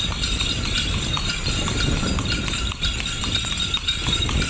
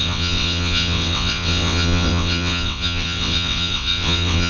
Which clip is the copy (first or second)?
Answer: second